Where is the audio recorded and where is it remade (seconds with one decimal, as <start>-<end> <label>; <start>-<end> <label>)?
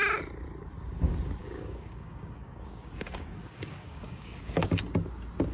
0.0-1.4 recorded; 1.4-4.6 remade; 4.6-5.5 recorded